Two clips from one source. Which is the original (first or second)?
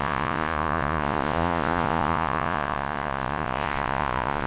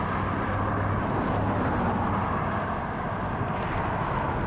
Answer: second